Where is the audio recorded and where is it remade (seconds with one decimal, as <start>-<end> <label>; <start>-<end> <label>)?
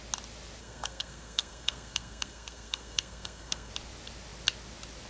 0.0-0.6 recorded; 0.6-3.7 remade; 3.7-5.1 recorded